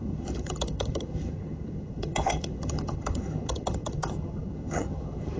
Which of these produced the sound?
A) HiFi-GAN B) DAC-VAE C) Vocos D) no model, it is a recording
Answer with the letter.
A